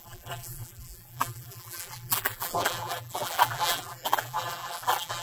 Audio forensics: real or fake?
fake